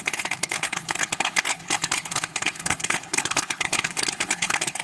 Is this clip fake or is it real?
fake